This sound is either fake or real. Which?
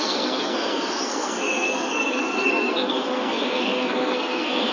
fake